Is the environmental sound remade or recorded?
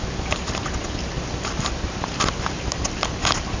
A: recorded